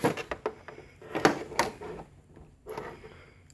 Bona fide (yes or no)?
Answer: yes